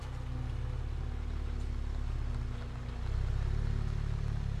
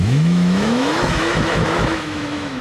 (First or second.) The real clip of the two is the first